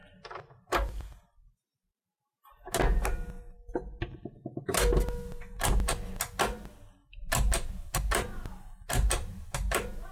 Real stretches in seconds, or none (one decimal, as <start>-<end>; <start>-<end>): 0.0-10.1